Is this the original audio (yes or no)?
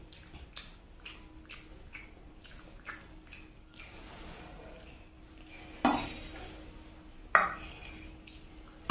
yes